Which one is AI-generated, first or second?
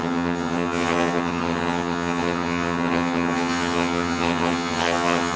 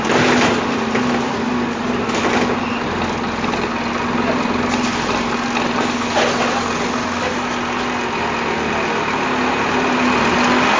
first